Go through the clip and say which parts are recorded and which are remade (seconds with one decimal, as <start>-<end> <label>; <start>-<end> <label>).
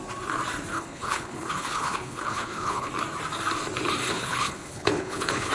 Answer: 0.0-0.7 recorded; 0.7-2.9 remade; 2.9-4.0 recorded; 4.0-5.5 remade